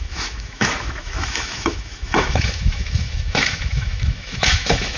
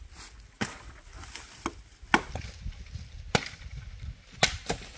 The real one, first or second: second